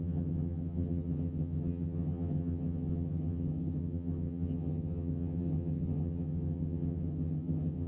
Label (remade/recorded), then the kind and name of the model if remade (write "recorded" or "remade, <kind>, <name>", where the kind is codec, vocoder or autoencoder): remade, vocoder, HiFi-GAN